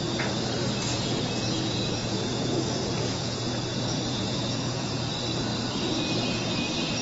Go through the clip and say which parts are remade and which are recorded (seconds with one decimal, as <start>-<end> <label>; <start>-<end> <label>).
0.0-0.9 recorded; 0.9-5.1 remade; 5.1-7.0 recorded